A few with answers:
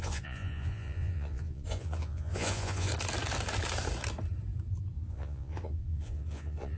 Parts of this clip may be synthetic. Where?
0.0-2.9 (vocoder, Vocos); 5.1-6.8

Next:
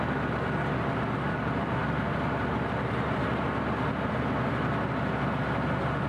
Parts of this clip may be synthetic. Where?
none

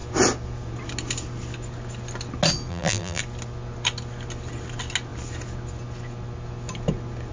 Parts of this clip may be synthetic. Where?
2.7-3.2 (vocoder, BigVGAN v2)